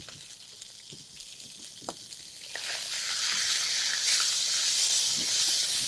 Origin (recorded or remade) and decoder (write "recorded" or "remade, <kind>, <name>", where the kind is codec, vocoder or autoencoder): recorded